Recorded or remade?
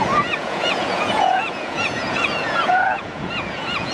remade